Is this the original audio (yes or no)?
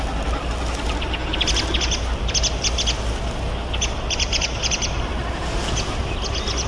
yes